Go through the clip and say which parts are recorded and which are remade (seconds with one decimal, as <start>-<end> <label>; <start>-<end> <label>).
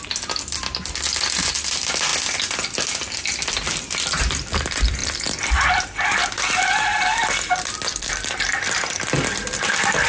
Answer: 0.0-10.1 recorded